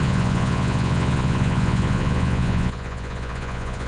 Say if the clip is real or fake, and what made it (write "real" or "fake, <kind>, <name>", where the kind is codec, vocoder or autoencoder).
fake, vocoder, Vocos